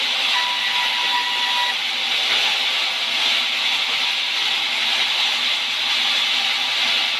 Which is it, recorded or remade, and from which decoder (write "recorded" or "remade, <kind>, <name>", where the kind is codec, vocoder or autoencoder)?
recorded